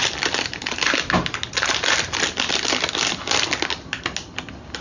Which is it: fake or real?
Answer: real